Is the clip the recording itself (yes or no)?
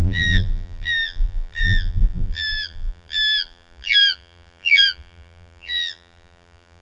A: no